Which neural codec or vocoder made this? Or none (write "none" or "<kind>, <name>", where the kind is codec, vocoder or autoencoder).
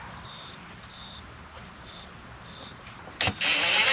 none